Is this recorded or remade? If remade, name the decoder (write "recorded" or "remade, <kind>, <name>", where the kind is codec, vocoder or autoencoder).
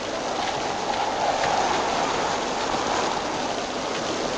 recorded